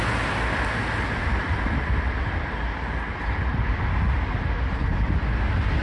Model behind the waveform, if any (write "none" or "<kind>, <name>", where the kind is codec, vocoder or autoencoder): none